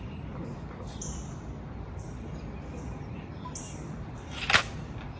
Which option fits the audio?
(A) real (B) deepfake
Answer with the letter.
B